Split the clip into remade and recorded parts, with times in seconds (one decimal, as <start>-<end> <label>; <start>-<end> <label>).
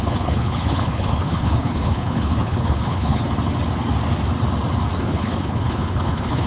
0.0-3.2 remade; 3.2-5.0 recorded; 5.0-6.5 remade